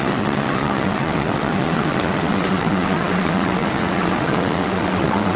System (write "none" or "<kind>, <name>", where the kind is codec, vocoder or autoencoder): vocoder, WaveNeXt